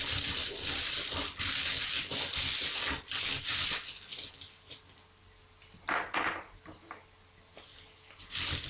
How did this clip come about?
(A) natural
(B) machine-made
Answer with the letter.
A